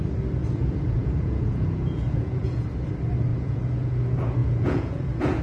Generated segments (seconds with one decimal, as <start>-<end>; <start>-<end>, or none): 0.4-2.7; 3.3-4.0; 4.4-5.4